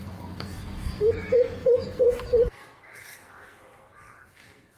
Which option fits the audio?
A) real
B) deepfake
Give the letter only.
B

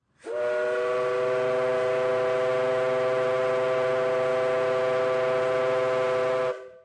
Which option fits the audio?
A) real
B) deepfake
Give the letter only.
A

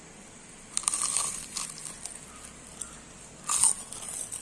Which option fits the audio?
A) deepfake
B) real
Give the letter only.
B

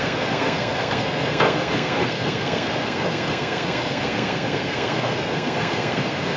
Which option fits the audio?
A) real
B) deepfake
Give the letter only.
B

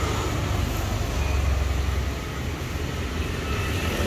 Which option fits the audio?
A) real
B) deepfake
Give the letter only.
A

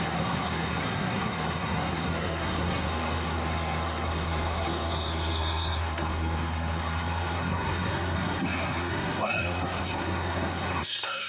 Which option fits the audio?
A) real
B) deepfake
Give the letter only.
B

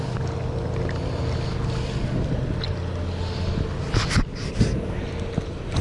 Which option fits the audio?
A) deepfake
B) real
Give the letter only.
B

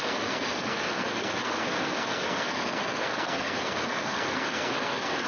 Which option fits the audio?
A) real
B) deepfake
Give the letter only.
B